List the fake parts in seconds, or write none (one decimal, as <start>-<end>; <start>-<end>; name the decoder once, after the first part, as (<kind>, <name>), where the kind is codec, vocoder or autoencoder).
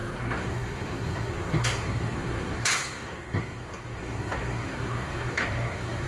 0.0-6.1 (codec, SNAC)